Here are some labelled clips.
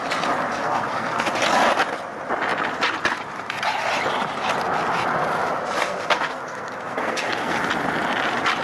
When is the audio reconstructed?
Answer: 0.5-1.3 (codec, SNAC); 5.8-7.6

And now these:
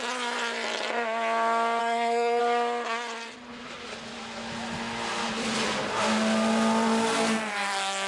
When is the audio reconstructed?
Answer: 1.8-2.4 (codec, SNAC)

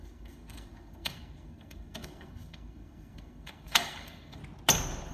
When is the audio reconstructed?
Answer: 0.0-4.4 (codec, SNAC)